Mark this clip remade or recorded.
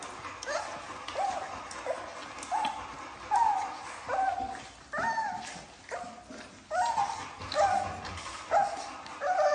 recorded